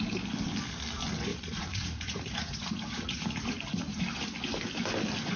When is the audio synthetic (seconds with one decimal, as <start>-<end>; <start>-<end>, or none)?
1.3-4.0